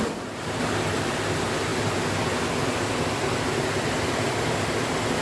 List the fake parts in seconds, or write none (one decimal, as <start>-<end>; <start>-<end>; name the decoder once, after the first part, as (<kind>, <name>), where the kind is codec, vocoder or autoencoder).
none